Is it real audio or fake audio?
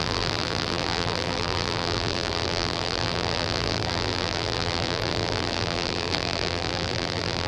fake